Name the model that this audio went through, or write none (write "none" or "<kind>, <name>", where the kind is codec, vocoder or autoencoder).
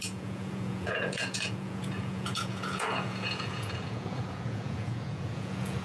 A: vocoder, Vocos